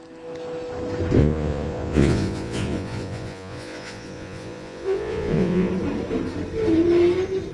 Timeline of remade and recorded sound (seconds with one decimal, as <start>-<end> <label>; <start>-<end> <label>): 0.0-1.2 recorded; 1.2-5.7 remade; 5.7-7.5 recorded